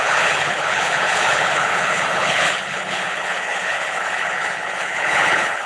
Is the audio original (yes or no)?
no